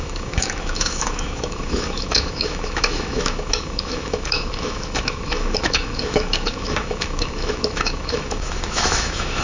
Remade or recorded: remade